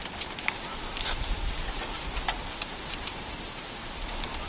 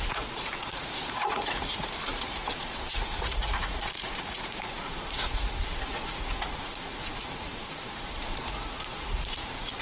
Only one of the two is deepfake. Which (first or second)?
second